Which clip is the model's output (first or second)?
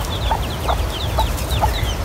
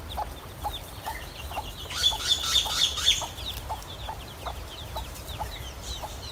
second